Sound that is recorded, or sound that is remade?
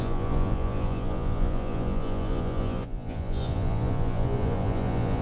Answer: remade